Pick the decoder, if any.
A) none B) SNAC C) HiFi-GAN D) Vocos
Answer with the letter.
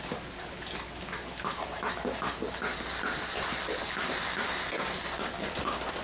A